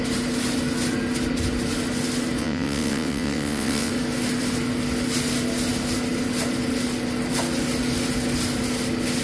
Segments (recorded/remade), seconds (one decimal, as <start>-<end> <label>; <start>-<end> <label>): 0.0-2.4 recorded; 2.4-3.9 remade; 3.9-9.2 recorded